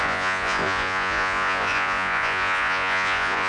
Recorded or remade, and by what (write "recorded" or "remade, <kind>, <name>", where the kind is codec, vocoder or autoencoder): remade, vocoder, Vocos